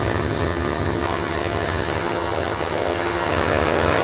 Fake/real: fake